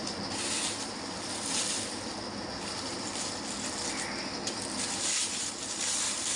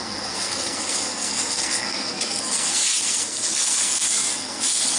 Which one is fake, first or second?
second